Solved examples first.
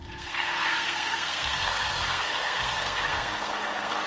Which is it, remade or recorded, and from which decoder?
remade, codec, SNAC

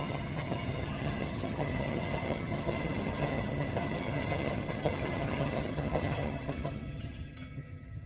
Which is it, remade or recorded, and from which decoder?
remade, vocoder, HiFi-GAN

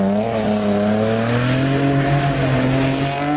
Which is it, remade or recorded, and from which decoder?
recorded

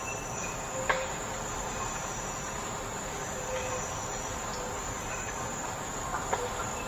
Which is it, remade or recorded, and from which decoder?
recorded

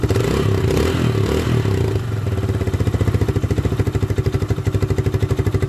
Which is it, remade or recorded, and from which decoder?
recorded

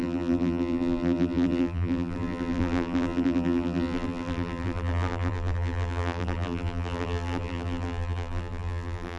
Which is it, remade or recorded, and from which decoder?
remade, vocoder, BigVGAN v2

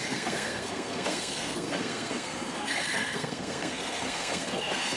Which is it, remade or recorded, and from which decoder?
remade, codec, SNAC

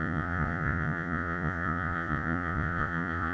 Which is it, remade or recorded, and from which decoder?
remade, vocoder, Vocos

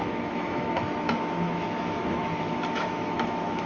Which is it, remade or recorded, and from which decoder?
remade, autoencoder, DAC-VAE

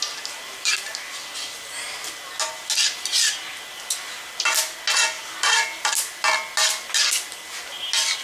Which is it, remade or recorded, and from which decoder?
recorded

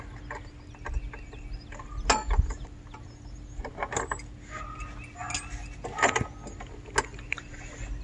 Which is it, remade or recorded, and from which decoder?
recorded